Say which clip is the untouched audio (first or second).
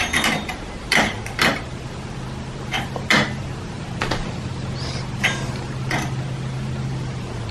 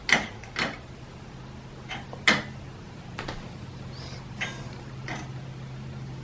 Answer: second